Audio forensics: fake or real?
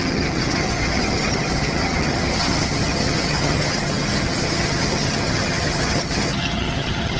fake